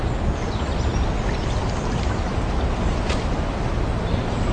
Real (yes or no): yes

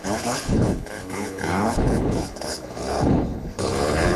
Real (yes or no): no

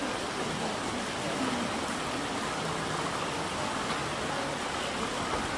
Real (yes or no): yes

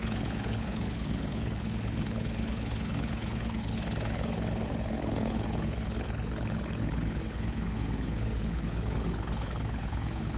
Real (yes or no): no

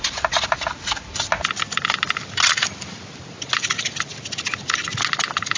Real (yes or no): yes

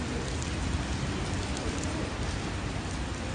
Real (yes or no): yes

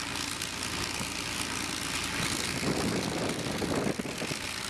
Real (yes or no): yes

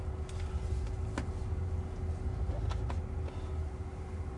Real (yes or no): yes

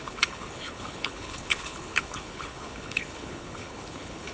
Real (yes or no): no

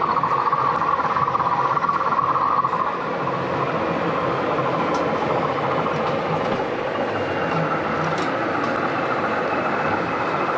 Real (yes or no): yes